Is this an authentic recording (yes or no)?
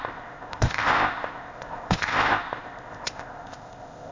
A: no